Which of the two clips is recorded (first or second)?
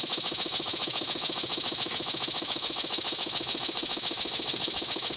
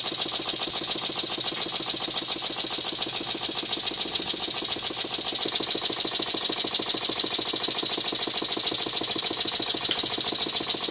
second